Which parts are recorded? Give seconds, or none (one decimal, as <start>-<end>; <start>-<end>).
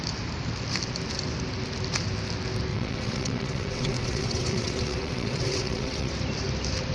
0.0-2.7; 6.1-6.9